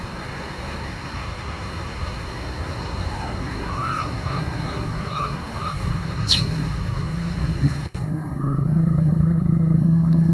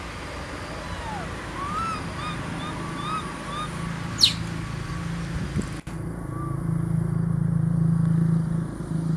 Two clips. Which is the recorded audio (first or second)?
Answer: second